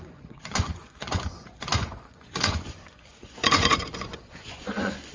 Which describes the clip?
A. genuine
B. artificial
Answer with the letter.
B